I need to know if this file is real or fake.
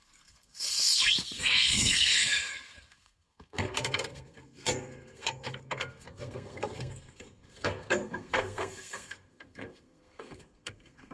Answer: fake